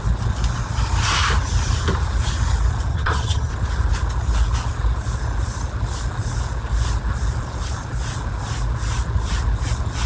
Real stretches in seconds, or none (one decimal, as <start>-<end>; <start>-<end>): 0.0-2.9; 3.5-10.1